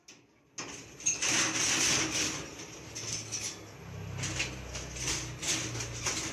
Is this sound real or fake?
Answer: real